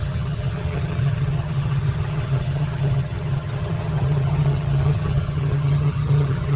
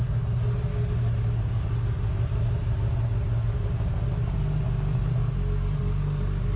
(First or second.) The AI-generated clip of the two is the first